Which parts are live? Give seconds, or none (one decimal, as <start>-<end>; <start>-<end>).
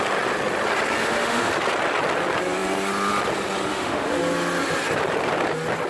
0.0-1.0; 1.5-3.7; 4.2-5.9